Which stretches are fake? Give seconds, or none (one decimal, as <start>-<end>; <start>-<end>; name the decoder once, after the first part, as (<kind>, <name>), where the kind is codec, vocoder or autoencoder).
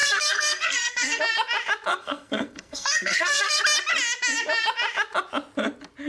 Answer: 0.0-1.2 (codec, SNAC); 1.9-3.6